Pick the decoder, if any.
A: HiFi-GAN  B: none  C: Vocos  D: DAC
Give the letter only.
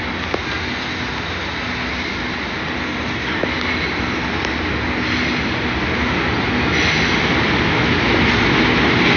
B